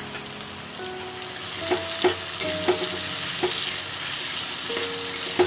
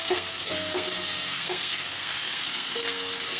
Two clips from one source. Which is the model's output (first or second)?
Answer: second